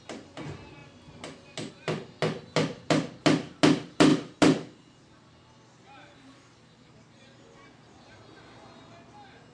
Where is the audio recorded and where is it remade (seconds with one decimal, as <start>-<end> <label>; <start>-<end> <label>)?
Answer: 0.0-9.5 recorded